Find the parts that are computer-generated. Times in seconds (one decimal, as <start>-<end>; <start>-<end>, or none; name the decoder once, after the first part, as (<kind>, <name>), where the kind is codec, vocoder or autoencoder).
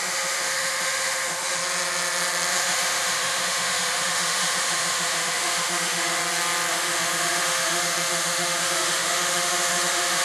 0.0-1.6 (autoencoder, DAC-VAE); 2.5-6.2; 6.7-10.2